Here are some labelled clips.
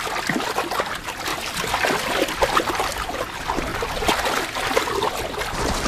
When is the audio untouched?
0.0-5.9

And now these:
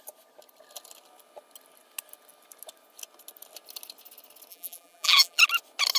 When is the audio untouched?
0.0-4.5; 5.4-6.0

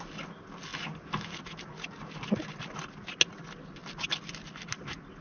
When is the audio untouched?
0.0-5.2

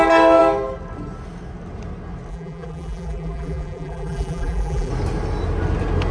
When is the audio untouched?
0.0-2.3; 4.9-6.1

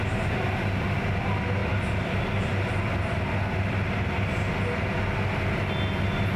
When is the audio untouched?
0.0-6.4

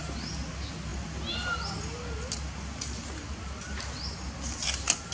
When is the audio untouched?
0.0-5.1

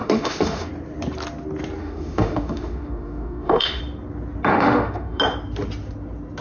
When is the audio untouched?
0.7-1.8; 3.8-4.5; 5.2-6.4

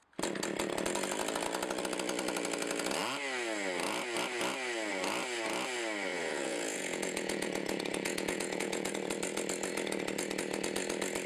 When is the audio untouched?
0.0-6.1; 8.9-11.3